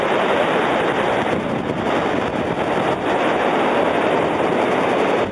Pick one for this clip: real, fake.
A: real